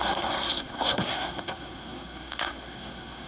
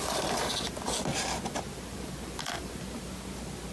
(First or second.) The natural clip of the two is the second